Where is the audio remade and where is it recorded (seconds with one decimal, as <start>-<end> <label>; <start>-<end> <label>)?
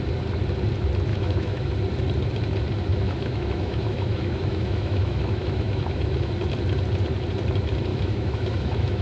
0.0-1.1 recorded; 1.1-1.7 remade; 1.7-2.9 recorded; 2.9-6.3 remade; 6.3-7.9 recorded; 7.9-9.0 remade